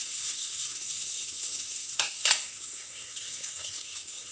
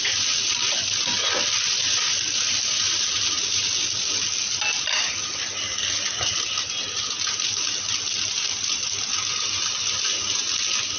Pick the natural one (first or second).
second